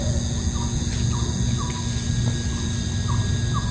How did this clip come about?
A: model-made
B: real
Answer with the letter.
B